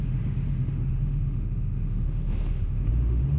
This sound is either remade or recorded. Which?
remade